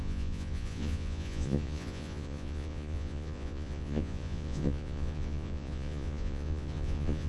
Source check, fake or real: fake